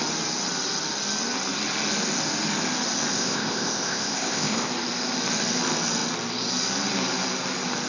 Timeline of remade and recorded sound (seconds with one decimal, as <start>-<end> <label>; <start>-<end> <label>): 0.0-3.1 recorded; 3.1-4.7 remade; 4.7-7.9 recorded